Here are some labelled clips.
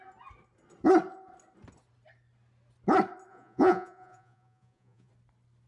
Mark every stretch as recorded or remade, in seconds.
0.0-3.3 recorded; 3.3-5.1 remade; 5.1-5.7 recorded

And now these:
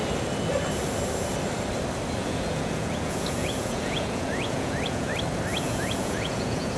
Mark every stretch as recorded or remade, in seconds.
0.0-2.2 recorded; 2.2-5.1 remade; 5.1-5.5 recorded; 5.5-6.8 remade

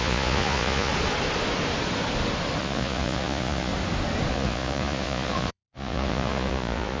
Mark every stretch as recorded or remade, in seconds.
0.0-0.9 remade; 0.9-2.6 recorded; 2.6-3.7 remade; 3.7-4.3 recorded; 4.3-7.0 remade

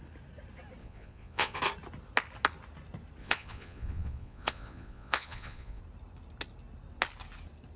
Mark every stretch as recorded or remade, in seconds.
0.0-0.8 recorded; 0.8-1.6 remade; 1.6-3.2 recorded; 3.2-5.8 remade; 5.8-7.8 recorded

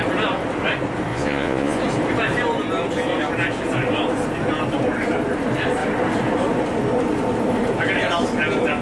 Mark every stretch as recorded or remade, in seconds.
0.0-1.1 recorded; 1.1-1.8 remade; 1.8-8.8 recorded

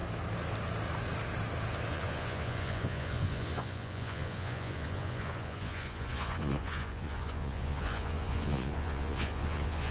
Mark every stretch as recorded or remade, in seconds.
0.0-1.9 recorded; 1.9-9.9 remade

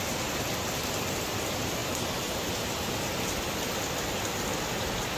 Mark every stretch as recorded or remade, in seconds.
0.0-5.2 recorded